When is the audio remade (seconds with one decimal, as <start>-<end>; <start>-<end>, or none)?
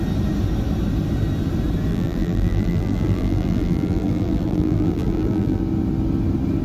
1.9-5.6